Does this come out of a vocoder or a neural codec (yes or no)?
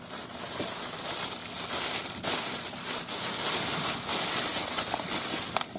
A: no